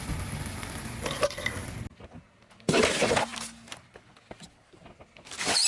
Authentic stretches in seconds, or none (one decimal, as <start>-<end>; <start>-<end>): 0.0-5.7